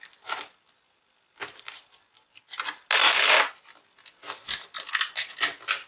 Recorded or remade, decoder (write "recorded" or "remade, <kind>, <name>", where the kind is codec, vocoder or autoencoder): recorded